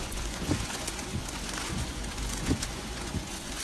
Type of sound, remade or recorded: remade